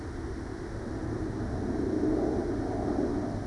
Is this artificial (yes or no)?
no